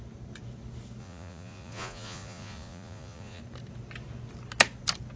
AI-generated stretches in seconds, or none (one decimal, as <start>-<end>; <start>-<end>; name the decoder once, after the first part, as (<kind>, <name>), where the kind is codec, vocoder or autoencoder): 1.0-3.4 (vocoder, Vocos)